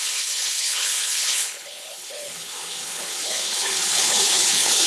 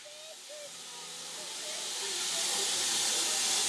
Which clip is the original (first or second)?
second